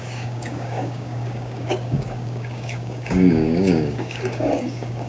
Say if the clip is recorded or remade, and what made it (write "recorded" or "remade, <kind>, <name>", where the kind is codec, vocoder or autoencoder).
remade, codec, DAC